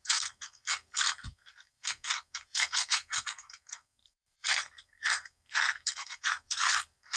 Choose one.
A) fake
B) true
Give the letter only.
A